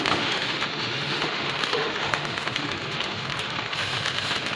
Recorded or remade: remade